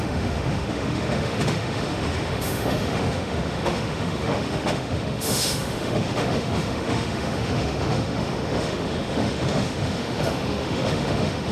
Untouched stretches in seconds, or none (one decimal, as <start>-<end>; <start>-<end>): none